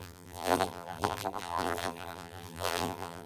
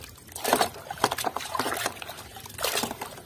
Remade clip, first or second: first